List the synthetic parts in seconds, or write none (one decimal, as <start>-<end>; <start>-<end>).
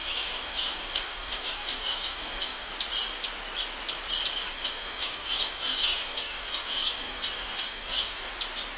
0.0-2.7; 4.5-8.3